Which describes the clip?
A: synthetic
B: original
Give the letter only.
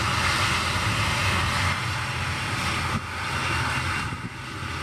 B